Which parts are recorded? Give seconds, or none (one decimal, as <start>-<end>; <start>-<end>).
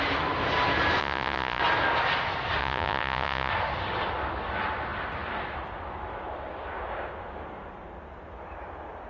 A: 0.0-1.0; 1.6-2.6; 3.5-9.1